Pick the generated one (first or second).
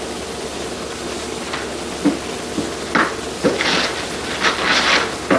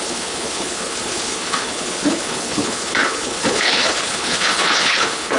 second